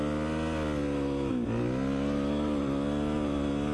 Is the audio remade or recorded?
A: recorded